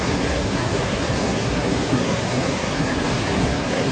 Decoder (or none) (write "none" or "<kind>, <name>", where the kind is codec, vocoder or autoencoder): codec, SNAC